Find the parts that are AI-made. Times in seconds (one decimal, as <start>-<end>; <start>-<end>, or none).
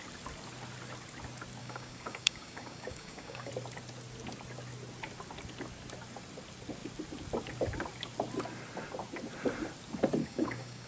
1.6-3.5; 10.2-10.9